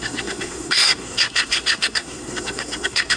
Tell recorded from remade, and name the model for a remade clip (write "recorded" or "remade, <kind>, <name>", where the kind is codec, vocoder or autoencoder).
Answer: remade, codec, SNAC